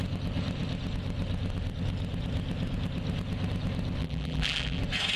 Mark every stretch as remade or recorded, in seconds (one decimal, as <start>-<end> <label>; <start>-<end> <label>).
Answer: 0.0-4.0 recorded; 4.0-4.8 remade; 4.8-5.2 recorded